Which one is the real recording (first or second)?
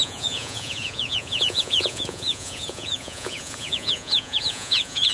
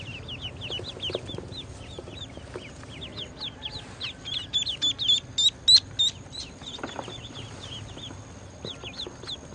second